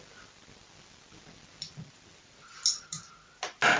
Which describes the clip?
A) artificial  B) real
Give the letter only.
B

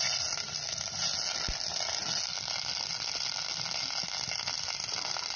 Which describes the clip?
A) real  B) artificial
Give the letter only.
A